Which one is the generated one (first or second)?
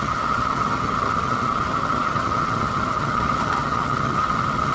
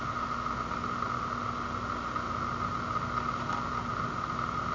first